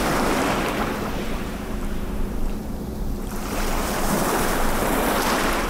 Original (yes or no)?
no